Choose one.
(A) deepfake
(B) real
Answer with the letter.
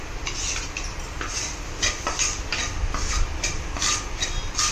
B